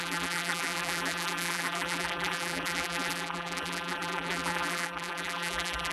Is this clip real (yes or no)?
no